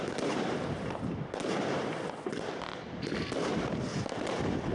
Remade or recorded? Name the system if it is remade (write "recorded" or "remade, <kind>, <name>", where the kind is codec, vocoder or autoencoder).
remade, vocoder, BigVGAN v2